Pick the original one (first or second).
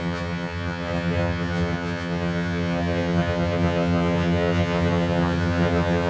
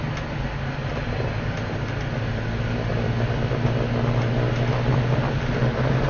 second